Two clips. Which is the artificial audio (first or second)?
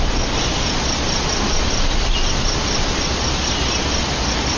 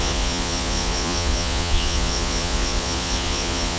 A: second